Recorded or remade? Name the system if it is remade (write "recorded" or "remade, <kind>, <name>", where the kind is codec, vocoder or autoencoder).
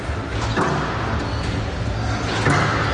recorded